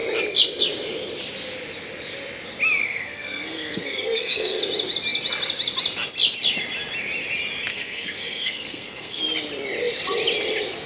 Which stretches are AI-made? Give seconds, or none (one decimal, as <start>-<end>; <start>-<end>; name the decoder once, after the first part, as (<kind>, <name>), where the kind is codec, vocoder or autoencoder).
2.8-4.6 (codec, SNAC); 7.7-9.2